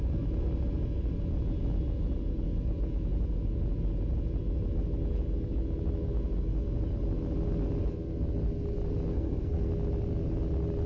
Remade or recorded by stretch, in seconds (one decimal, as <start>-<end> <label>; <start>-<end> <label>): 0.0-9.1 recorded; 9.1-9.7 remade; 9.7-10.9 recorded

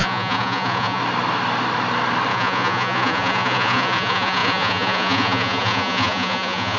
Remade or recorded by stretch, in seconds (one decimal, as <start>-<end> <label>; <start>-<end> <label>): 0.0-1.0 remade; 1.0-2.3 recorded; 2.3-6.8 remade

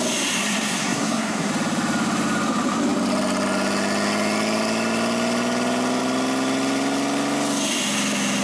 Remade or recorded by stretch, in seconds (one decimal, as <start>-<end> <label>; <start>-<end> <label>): 0.0-0.4 recorded; 0.4-1.5 remade; 1.5-8.4 recorded

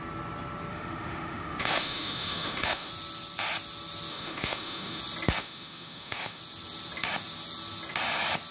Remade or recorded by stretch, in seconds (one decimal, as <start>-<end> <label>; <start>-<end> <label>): 0.0-0.7 recorded; 0.7-2.9 remade; 2.9-4.1 recorded; 4.1-5.0 remade; 5.0-5.4 recorded; 5.4-6.4 remade; 6.4-8.5 recorded

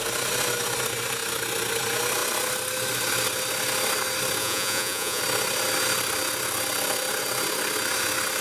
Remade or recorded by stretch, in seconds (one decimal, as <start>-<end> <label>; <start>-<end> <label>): 0.0-4.4 recorded; 4.4-5.2 remade; 5.2-8.4 recorded